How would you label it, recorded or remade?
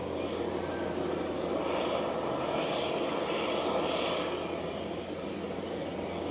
recorded